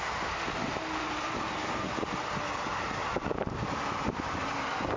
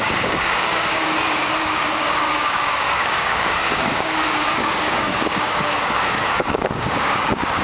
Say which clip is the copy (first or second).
second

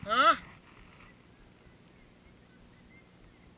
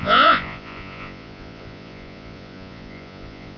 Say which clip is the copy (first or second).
second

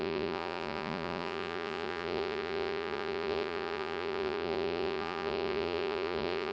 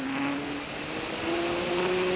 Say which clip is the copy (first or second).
first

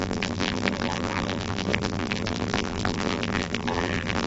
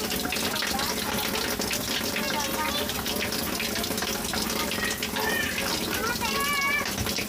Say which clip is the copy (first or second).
first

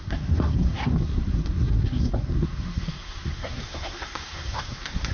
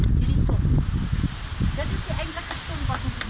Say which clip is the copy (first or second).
first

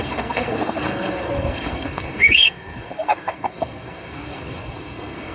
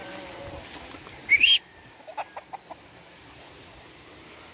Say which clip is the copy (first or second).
first